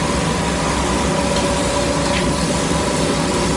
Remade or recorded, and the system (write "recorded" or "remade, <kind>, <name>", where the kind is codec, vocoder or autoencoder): recorded